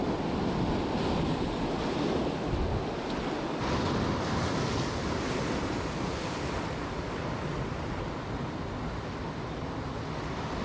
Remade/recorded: recorded